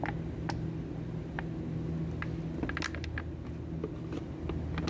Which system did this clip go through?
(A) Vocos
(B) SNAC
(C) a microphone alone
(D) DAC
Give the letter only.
C